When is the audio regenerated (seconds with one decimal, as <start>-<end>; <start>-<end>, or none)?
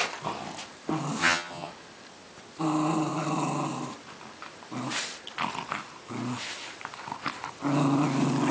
1.2-1.7